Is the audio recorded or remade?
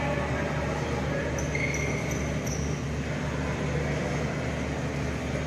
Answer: recorded